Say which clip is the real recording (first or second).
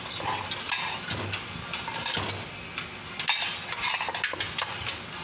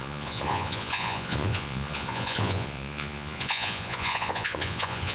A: first